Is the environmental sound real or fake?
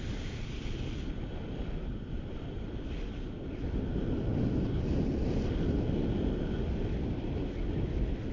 real